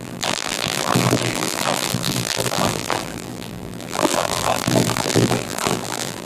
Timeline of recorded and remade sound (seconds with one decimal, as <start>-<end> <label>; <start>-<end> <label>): 0.0-6.3 remade